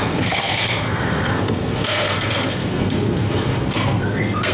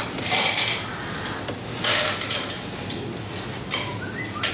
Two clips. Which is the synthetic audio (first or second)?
first